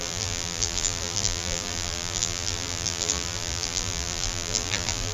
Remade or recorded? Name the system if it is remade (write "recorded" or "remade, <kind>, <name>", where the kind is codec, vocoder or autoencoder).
remade, vocoder, BigVGAN v2